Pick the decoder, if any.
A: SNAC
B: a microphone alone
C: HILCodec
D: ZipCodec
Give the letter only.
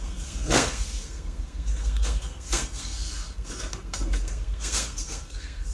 A